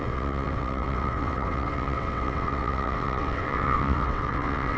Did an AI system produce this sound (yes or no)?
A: yes